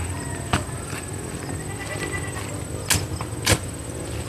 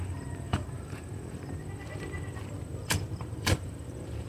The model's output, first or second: second